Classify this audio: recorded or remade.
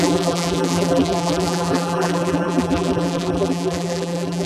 remade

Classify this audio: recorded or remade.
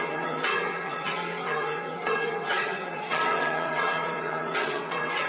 remade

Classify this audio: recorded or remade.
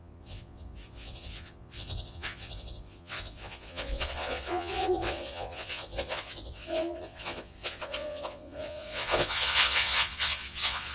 remade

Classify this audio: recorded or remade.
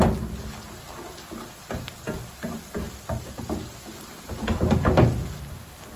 recorded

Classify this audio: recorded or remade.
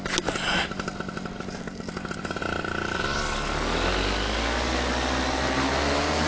recorded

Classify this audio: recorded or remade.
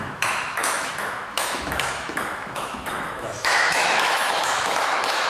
remade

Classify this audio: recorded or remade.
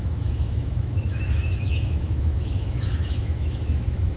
remade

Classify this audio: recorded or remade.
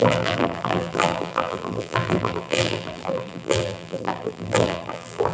remade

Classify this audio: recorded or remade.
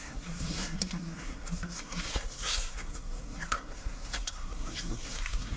remade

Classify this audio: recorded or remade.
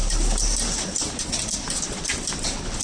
recorded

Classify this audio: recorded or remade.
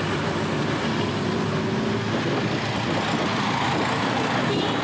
recorded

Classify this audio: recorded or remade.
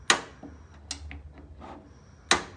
recorded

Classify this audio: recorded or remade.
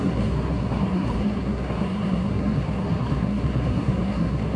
remade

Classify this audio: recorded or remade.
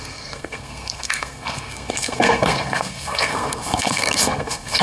remade